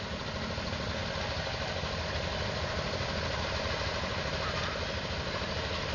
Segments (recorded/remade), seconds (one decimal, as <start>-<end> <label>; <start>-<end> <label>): 0.0-5.9 recorded